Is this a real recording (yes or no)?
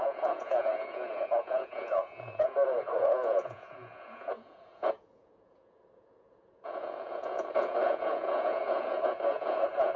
no